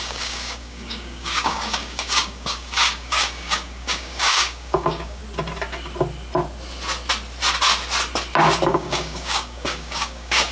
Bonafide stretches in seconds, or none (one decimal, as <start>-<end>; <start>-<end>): 5.2-8.7